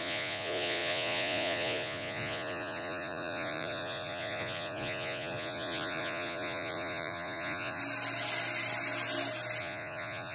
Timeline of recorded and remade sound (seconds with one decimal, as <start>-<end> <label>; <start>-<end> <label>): 0.0-7.8 remade; 7.8-9.6 recorded; 9.6-10.3 remade